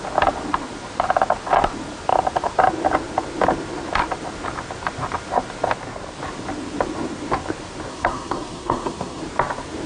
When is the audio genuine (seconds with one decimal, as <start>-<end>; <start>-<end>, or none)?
0.0-7.9; 9.2-9.9